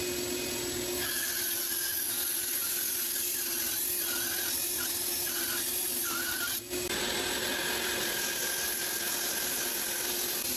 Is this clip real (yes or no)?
yes